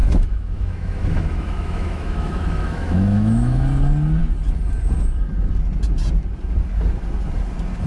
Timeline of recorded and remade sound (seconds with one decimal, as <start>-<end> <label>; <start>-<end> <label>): 0.0-3.6 remade; 3.6-7.9 recorded